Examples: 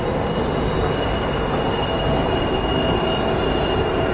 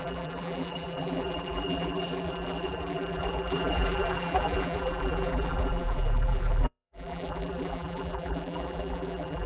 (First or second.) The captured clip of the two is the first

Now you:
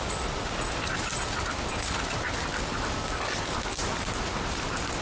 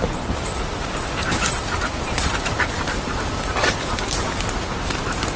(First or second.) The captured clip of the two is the first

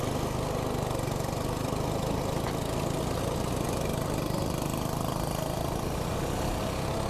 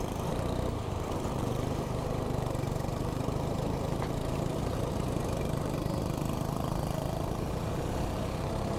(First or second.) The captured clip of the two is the first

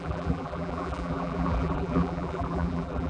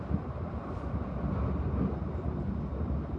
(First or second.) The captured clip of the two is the second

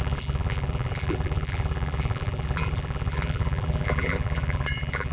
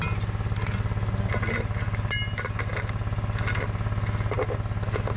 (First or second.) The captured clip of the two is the second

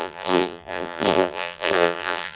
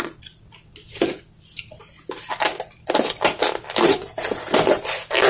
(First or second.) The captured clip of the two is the second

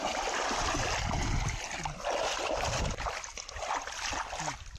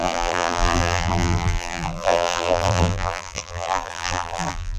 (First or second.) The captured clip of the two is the first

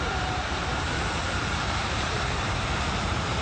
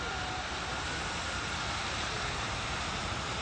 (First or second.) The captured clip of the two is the second